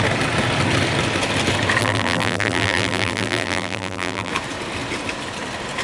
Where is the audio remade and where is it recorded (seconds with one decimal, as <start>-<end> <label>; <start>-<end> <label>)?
0.0-1.8 recorded; 1.8-4.3 remade; 4.3-5.8 recorded